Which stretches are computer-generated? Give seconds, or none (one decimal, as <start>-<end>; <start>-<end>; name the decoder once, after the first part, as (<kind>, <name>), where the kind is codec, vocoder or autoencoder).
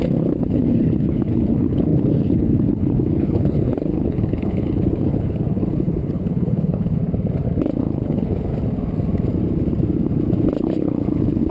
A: 0.0-7.0 (codec, HILCodec); 7.8-8.5; 10.6-11.5